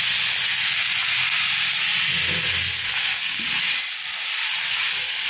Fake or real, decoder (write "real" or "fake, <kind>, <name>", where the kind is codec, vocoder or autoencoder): real